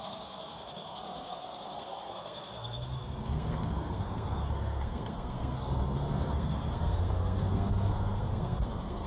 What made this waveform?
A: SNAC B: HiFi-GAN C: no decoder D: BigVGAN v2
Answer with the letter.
A